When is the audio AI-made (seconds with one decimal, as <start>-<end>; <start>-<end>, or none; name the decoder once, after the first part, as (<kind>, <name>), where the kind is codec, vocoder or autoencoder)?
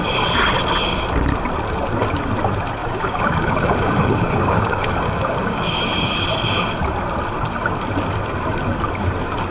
2.8-5.8 (codec, DAC)